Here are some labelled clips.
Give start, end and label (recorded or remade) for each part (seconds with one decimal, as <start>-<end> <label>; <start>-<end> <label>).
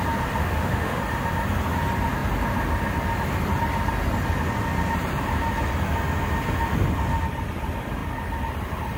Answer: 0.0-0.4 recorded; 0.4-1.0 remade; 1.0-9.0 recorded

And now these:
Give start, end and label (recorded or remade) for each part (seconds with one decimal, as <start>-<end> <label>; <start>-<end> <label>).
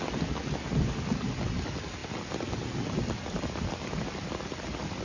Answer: 0.0-5.0 recorded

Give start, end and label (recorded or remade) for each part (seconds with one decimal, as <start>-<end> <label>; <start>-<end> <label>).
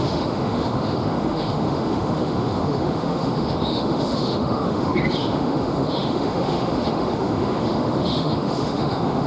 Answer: 0.0-9.3 remade